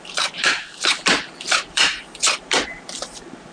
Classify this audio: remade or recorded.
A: remade